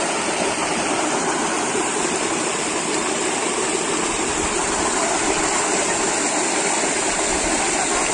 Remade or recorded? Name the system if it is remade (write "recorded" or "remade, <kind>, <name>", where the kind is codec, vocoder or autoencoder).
remade, vocoder, BigVGAN v2